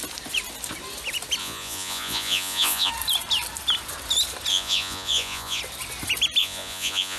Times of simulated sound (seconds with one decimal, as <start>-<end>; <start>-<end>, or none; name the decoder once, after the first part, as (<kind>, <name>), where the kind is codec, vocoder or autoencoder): 1.4-2.9 (vocoder, Vocos); 4.5-5.6; 6.4-7.2